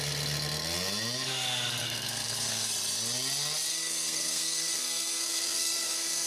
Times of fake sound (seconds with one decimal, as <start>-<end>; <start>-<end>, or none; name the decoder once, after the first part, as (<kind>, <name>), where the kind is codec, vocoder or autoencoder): 1.8-2.7 (codec, SNAC); 3.7-6.3